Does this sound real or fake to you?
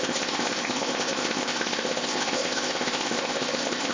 fake